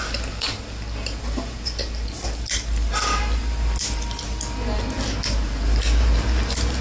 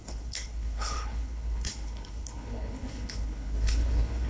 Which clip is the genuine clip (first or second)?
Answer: first